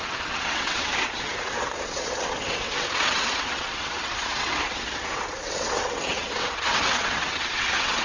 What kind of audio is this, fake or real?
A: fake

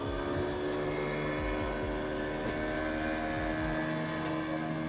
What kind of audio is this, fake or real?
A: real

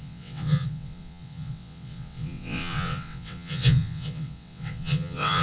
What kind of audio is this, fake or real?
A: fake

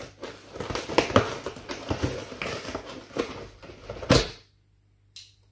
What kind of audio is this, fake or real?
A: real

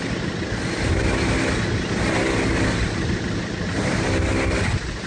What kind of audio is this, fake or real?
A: real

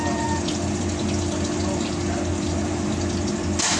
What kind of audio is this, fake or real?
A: real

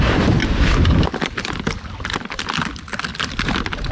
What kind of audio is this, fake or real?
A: real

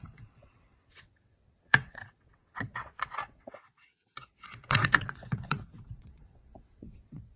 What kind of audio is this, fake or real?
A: fake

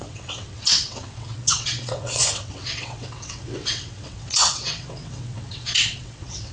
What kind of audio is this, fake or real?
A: fake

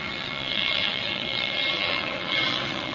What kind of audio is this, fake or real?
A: fake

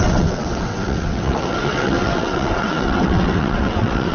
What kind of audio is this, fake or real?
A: fake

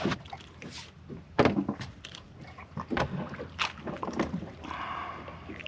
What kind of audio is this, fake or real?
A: real